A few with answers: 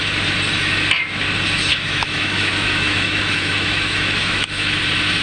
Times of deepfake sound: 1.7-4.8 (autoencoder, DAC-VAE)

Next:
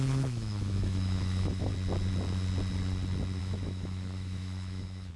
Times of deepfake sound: 0.0-1.7 (autoencoder, DAC-VAE); 3.4-5.2